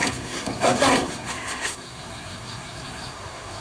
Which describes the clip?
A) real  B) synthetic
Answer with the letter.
B